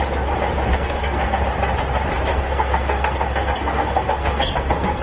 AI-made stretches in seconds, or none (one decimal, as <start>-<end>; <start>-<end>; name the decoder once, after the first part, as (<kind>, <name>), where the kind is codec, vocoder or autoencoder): 0.7-1.4 (codec, SNAC); 2.3-5.0